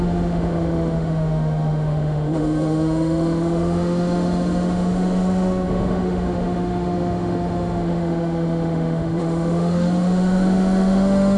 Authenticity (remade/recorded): remade